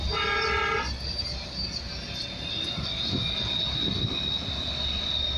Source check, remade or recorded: recorded